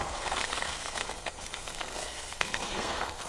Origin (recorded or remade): remade